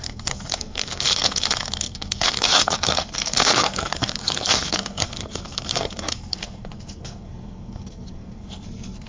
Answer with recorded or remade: remade